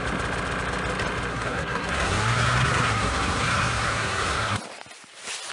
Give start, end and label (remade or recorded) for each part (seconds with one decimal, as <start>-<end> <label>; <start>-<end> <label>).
0.0-1.3 recorded; 1.3-4.6 remade; 4.6-5.5 recorded

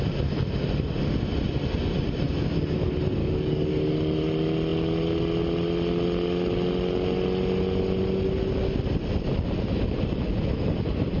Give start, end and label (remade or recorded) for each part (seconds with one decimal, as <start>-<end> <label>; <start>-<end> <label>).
0.0-3.2 recorded; 3.2-3.7 remade; 3.7-11.2 recorded

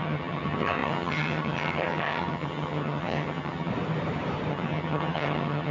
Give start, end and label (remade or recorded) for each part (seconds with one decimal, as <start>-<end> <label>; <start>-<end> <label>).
0.0-3.7 remade; 3.7-4.5 recorded; 4.5-5.7 remade

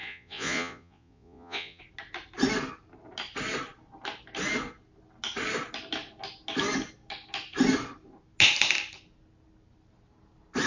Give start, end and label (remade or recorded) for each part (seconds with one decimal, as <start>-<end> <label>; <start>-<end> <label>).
0.0-1.8 remade; 1.8-10.7 recorded

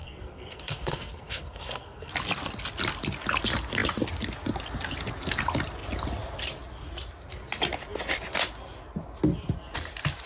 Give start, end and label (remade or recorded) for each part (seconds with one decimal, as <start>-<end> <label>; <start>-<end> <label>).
0.0-2.1 remade; 2.1-10.3 recorded

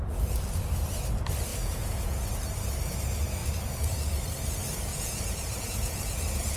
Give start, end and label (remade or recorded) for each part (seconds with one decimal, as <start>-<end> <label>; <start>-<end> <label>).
0.0-1.5 recorded; 1.5-2.2 remade; 2.2-4.9 recorded; 4.9-6.6 remade